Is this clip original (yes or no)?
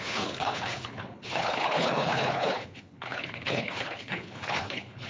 no